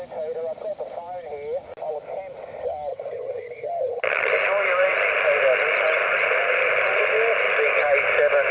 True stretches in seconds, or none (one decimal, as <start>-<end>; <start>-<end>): 0.0-2.9; 4.3-8.5

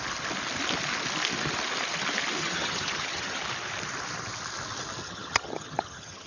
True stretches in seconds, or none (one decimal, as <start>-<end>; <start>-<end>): 0.0-2.4; 3.4-5.0

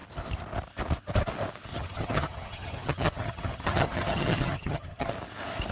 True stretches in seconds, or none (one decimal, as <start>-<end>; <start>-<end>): 0.0-1.7; 5.1-5.7

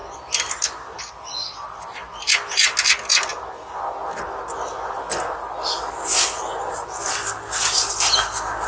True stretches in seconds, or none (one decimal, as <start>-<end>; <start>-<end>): 0.0-8.7

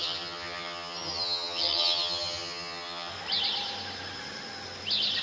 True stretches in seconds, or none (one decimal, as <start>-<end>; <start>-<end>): 3.1-5.2

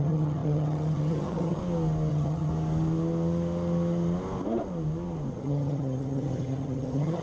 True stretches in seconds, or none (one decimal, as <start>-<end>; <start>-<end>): 1.6-2.1; 2.5-5.3

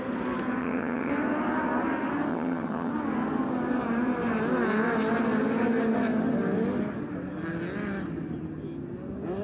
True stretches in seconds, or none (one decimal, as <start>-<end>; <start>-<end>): 0.0-0.6; 1.1-2.3; 2.9-9.4

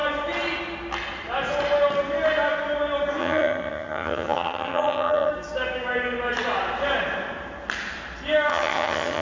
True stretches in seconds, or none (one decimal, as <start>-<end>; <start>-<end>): 0.0-3.2; 5.3-8.5